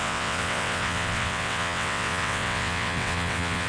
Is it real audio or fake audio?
fake